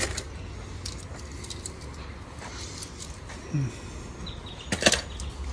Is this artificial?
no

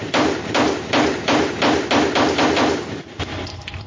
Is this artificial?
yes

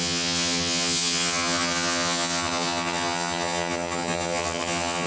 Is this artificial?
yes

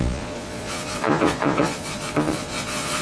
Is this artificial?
yes